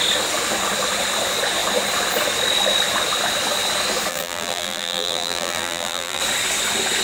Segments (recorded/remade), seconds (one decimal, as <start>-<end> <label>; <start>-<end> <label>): 0.0-4.1 recorded; 4.1-6.2 remade; 6.2-7.0 recorded